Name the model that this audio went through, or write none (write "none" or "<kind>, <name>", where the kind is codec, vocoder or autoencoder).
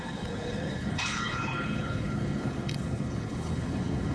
codec, HILCodec